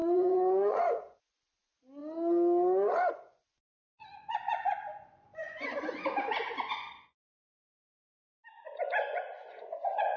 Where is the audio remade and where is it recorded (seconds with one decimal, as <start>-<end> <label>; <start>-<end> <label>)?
0.0-2.0 remade; 2.0-3.1 recorded; 3.1-8.3 remade; 8.3-8.9 recorded; 8.9-10.2 remade